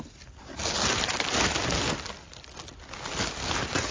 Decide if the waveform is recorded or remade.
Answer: recorded